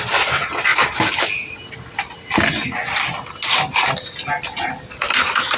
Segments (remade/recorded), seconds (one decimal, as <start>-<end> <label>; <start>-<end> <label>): 0.0-5.6 recorded